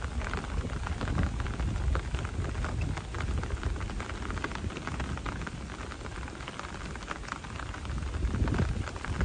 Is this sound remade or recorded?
recorded